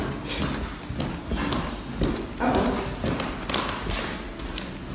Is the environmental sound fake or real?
real